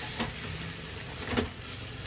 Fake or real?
real